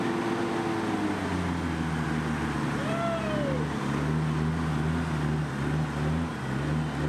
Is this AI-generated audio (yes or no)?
no